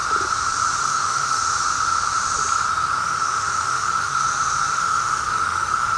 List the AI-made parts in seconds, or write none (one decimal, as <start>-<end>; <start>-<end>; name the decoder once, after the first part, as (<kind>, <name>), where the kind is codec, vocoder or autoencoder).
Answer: 0.8-1.4 (autoencoder, DAC-VAE); 3.0-4.1; 4.7-6.0